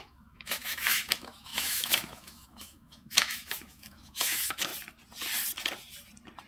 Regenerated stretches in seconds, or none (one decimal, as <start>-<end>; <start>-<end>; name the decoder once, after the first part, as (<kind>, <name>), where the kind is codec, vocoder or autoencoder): 0.0-4.7 (autoencoder, DAC-VAE)